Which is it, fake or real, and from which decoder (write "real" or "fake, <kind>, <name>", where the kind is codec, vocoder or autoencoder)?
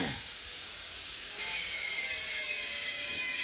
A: fake, codec, DAC